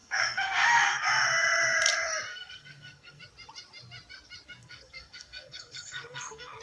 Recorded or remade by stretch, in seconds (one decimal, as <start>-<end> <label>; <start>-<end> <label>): 0.0-1.1 remade; 1.1-2.3 recorded; 2.3-3.2 remade; 3.2-4.6 recorded; 4.6-6.6 remade